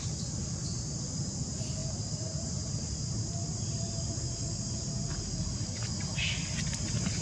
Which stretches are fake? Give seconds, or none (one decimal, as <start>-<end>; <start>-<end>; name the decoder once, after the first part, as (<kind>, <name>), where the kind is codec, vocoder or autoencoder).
1.8-6.1 (vocoder, BigVGAN v2)